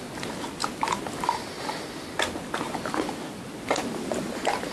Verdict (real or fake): real